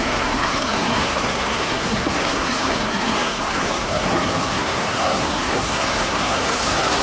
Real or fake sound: fake